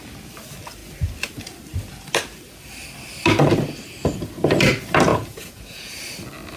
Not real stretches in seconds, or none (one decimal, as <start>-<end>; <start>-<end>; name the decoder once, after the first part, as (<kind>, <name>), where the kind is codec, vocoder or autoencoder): 5.1-5.9 (vocoder, Vocos)